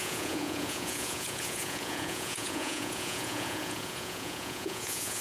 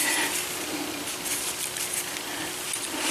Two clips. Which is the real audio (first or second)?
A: second